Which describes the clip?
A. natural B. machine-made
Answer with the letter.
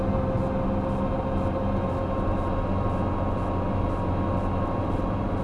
A